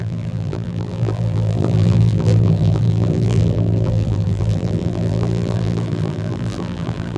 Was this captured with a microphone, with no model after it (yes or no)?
no